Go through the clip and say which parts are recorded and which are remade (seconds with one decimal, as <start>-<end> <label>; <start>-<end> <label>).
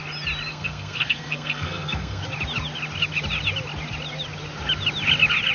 0.0-0.5 recorded; 0.5-2.2 remade; 2.2-5.5 recorded